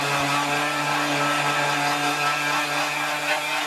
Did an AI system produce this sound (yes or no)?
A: no